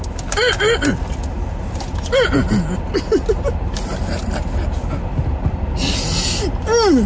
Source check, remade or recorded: recorded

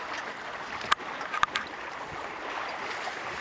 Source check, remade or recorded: recorded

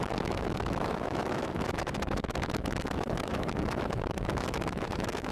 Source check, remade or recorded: remade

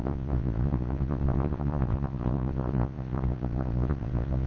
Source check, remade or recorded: remade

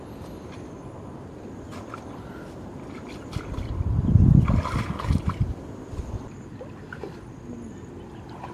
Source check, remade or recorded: recorded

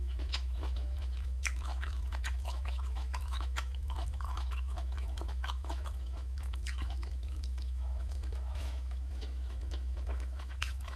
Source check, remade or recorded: remade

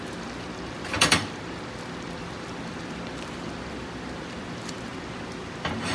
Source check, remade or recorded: remade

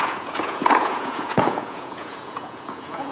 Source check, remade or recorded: remade